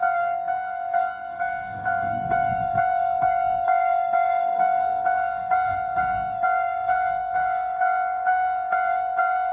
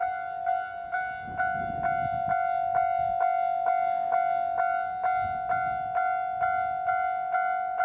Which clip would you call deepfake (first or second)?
first